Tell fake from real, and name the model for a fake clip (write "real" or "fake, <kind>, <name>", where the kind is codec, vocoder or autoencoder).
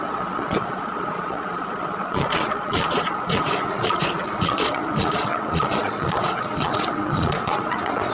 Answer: fake, vocoder, Vocos